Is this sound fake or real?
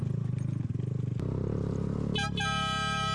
real